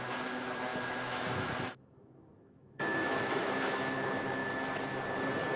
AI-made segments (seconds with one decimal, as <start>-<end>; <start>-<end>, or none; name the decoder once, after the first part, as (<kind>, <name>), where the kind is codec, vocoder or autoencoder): 0.0-4.4 (autoencoder, DAC-VAE)